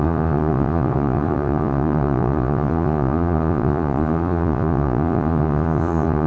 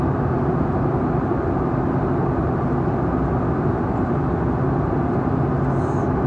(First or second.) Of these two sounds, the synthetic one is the first